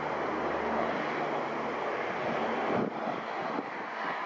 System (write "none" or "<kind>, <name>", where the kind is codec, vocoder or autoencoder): none